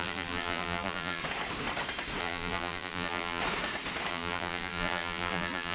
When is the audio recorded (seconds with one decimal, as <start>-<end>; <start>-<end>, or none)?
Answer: 1.2-2.2; 3.4-4.1